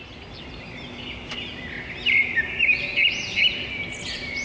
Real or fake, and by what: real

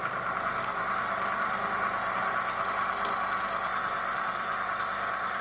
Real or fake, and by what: real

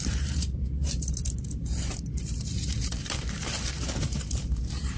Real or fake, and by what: fake, vocoder, BigVGAN v2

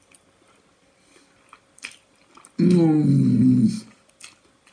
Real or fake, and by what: real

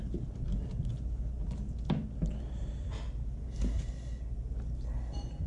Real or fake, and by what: real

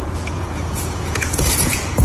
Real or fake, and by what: fake, vocoder, Vocos